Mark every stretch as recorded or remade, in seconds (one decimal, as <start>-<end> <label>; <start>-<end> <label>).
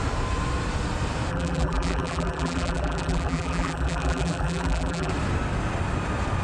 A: 0.0-1.3 recorded; 1.3-5.1 remade; 5.1-6.4 recorded